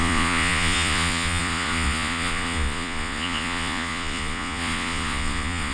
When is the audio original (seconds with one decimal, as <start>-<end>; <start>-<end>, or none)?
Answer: none